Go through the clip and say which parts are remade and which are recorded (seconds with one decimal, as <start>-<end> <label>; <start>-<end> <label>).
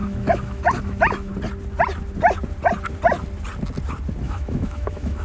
0.0-1.3 remade; 1.3-4.2 recorded; 4.2-5.2 remade